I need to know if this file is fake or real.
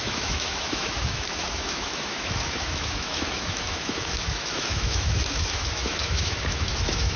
fake